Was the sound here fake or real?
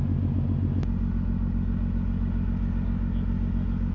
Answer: real